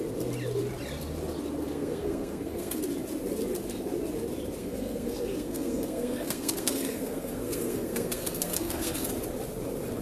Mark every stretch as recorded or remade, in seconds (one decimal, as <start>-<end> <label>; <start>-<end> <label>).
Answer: 0.0-1.6 recorded; 1.6-2.8 remade; 2.8-4.6 recorded; 4.6-9.1 remade; 9.1-10.0 recorded